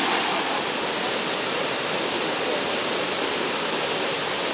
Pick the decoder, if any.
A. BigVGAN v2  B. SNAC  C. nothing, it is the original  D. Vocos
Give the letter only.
C